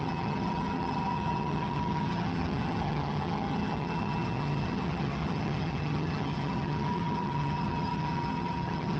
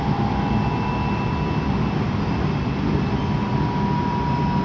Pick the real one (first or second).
second